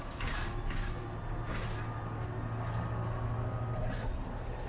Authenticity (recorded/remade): recorded